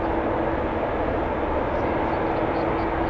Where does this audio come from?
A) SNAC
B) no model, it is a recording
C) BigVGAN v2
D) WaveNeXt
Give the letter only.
B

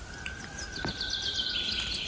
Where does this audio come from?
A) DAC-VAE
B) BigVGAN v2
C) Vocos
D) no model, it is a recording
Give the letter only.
D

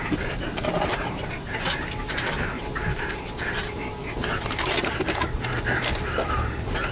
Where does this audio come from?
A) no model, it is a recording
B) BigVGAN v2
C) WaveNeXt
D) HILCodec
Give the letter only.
B